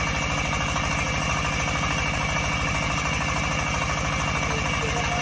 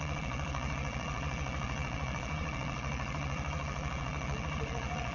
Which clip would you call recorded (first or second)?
first